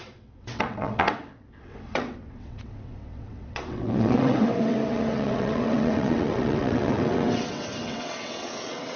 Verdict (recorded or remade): remade